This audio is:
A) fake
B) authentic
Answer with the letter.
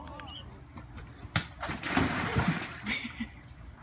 A